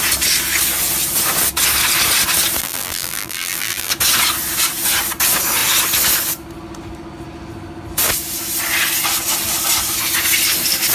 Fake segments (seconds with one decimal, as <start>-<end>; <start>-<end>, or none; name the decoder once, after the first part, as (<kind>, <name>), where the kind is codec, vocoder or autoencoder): 2.6-3.9 (vocoder, BigVGAN v2)